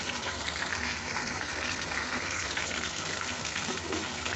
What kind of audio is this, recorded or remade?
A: remade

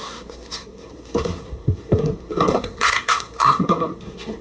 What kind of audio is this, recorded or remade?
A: remade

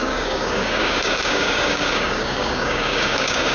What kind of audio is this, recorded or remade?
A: remade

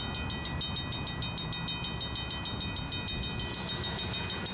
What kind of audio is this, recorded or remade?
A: recorded